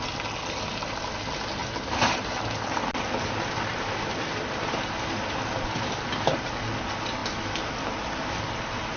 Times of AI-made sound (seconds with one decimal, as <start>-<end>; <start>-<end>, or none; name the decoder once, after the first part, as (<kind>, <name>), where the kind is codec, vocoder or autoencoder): 1.6-2.4 (vocoder, BigVGAN v2)